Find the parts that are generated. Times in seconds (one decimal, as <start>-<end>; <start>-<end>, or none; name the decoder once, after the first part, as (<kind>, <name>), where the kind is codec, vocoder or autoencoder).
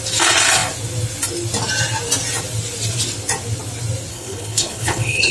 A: 4.1-5.3 (codec, HILCodec)